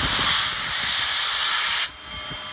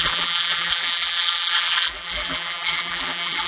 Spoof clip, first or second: second